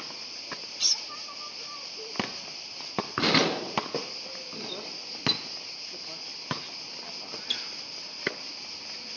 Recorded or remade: recorded